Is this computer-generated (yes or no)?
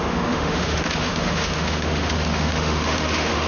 yes